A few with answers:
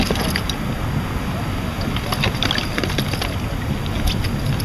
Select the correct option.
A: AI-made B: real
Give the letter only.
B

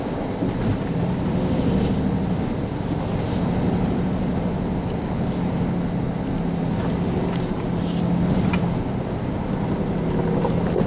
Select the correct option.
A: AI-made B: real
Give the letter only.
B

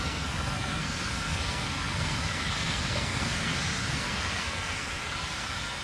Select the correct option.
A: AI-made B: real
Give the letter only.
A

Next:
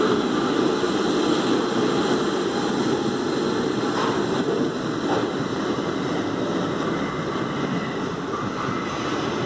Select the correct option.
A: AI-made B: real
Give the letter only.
B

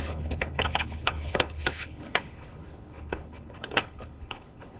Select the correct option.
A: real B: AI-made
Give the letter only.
B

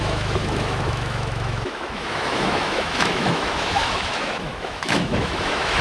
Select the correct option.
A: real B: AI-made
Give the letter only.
B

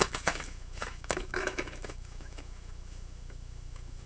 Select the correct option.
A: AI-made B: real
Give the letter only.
A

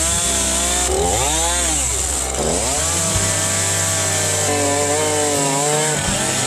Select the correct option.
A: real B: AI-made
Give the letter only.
A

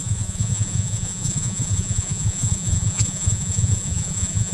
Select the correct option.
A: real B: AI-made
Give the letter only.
B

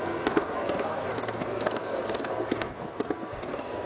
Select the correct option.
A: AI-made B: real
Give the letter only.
A